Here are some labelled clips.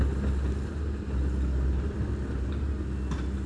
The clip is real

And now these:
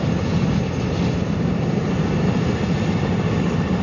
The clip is real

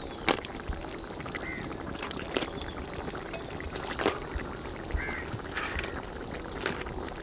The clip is real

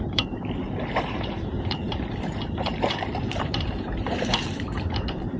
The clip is fake